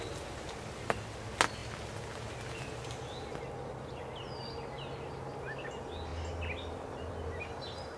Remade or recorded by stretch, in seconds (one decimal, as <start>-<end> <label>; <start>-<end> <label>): 0.0-8.0 recorded